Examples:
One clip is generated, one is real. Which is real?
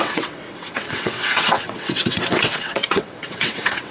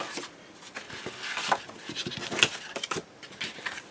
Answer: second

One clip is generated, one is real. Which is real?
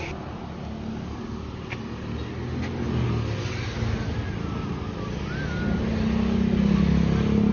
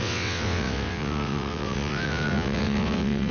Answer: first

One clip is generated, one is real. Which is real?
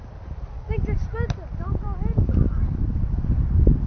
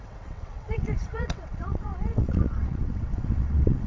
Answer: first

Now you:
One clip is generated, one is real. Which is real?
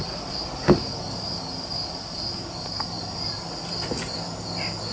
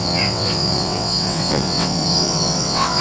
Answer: first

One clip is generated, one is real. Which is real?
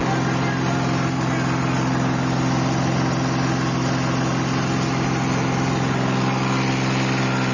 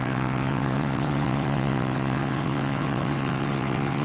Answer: first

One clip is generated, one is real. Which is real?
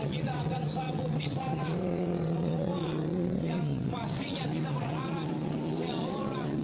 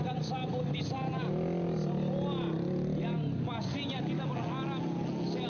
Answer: second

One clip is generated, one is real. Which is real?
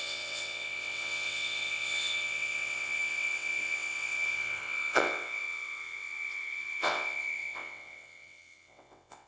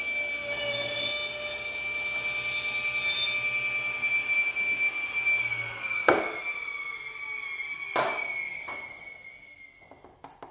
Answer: second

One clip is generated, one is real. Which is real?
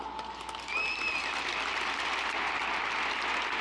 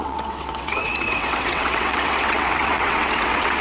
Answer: first